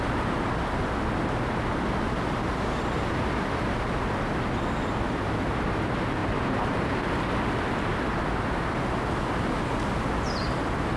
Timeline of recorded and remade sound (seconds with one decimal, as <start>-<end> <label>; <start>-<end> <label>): 0.0-6.2 recorded; 6.2-7.0 remade; 7.0-11.0 recorded